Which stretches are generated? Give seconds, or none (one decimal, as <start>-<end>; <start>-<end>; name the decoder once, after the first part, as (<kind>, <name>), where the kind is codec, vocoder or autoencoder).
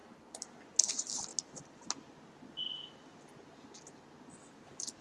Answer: none